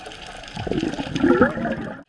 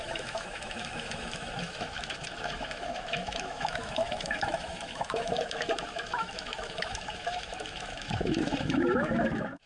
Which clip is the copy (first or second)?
second